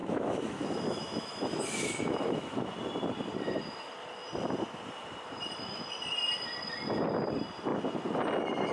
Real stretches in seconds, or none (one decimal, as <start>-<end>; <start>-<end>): 2.6-8.7